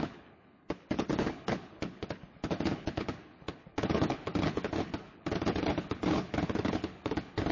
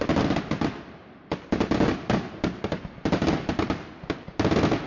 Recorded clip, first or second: second